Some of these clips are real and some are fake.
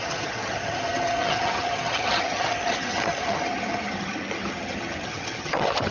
fake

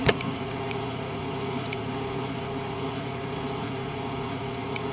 fake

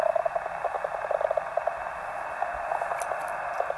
real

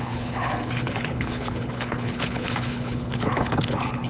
fake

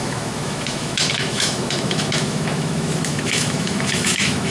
fake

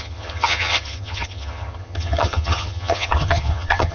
fake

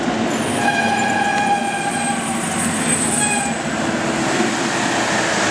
real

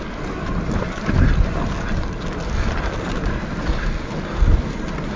real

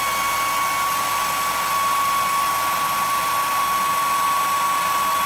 real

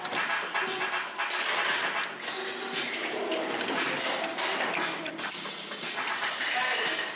real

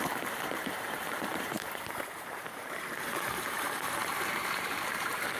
fake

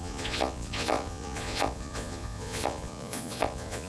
fake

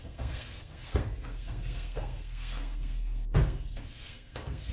fake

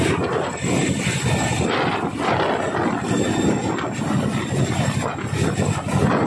real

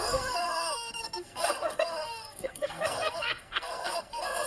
fake